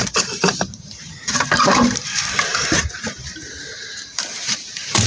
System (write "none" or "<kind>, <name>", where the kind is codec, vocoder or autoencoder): vocoder, BigVGAN v2